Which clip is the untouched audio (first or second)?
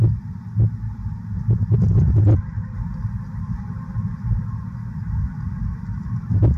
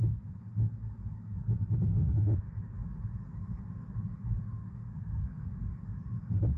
first